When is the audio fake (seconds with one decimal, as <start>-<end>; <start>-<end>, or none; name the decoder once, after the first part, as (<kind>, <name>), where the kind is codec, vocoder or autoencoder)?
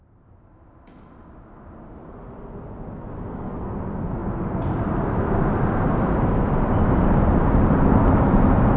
3.3-3.8 (codec, SNAC)